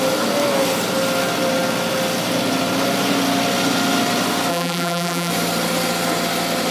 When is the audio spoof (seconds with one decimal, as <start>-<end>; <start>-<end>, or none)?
4.5-5.3